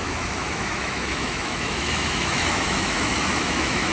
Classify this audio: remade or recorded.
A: remade